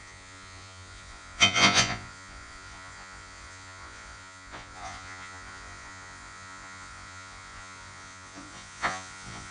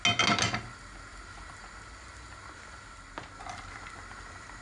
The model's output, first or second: first